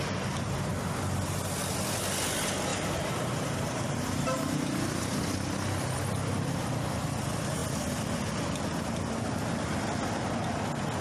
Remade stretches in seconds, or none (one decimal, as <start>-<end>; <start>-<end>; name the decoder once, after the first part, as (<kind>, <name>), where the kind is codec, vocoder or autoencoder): 2.7-5.1 (vocoder, BigVGAN v2)